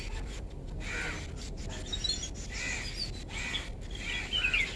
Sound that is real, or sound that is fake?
real